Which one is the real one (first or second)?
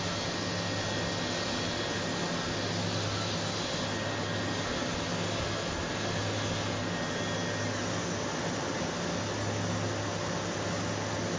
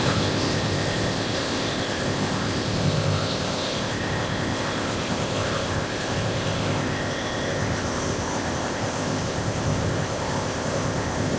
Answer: first